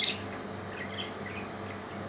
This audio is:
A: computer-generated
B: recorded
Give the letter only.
B